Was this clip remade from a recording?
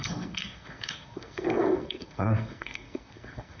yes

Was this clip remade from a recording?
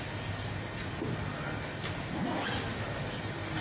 no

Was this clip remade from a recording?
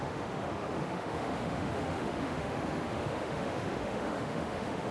yes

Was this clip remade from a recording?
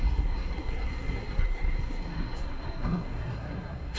yes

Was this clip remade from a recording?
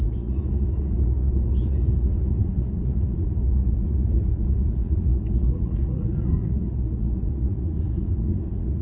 yes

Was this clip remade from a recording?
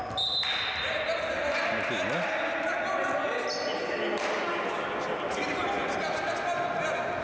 no